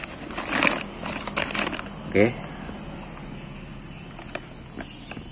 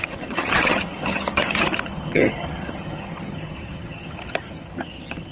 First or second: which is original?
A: first